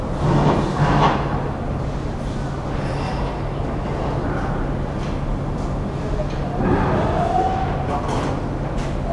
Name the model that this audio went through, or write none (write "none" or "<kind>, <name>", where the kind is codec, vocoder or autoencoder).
none